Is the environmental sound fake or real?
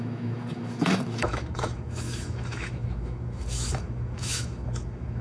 fake